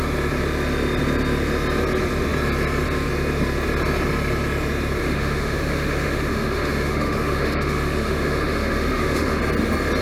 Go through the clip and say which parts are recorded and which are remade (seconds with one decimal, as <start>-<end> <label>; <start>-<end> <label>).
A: 0.0-5.0 recorded; 5.0-9.4 remade; 9.4-10.0 recorded